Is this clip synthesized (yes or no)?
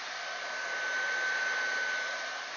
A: no